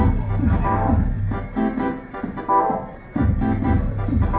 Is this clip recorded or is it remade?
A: recorded